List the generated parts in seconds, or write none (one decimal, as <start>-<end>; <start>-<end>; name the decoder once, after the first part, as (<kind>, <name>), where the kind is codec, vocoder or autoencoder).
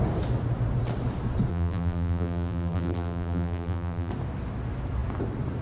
1.5-4.1 (vocoder, BigVGAN v2)